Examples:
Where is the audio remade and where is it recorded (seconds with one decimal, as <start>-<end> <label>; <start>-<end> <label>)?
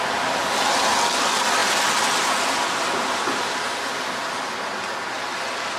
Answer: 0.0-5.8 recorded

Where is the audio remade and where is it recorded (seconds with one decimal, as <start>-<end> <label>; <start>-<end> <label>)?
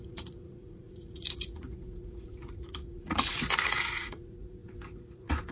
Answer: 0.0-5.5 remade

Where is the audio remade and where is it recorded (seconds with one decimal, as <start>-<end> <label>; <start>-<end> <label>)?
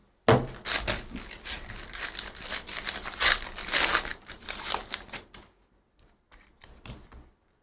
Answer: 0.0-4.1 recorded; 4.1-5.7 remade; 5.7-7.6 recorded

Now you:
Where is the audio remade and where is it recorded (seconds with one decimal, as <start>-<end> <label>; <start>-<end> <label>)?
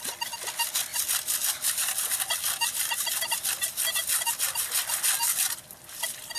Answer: 0.0-6.4 recorded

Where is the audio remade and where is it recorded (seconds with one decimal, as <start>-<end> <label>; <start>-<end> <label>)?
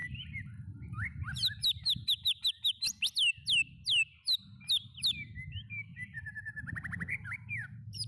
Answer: 0.0-0.8 remade; 0.8-5.9 recorded; 5.9-8.1 remade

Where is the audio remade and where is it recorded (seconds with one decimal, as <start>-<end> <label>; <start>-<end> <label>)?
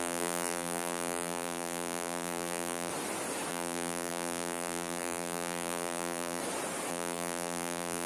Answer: 0.0-2.9 remade; 2.9-3.5 recorded; 3.5-6.4 remade; 6.4-6.9 recorded; 6.9-8.1 remade